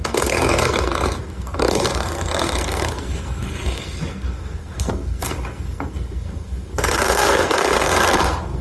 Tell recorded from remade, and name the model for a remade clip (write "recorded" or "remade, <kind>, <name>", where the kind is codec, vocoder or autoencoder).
remade, codec, SNAC